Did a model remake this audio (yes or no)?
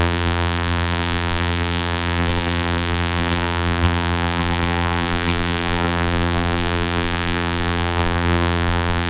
yes